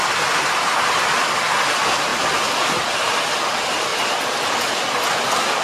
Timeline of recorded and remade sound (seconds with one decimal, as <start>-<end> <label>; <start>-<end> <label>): 0.0-2.1 recorded; 2.1-3.2 remade; 3.2-3.9 recorded; 3.9-4.5 remade; 4.5-5.6 recorded